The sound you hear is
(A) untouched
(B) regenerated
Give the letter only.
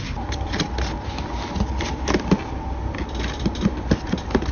A